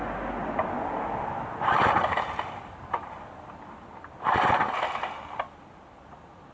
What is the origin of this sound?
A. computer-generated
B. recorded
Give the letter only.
B